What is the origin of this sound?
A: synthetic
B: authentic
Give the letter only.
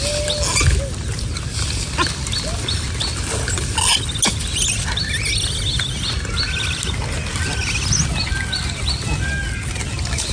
B